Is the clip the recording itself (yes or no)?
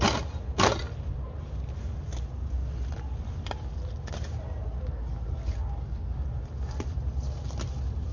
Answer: yes